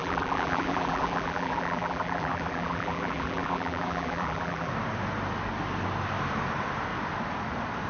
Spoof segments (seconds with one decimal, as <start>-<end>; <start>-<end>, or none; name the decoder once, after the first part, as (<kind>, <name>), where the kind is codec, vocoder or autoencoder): 0.0-4.7 (vocoder, BigVGAN v2)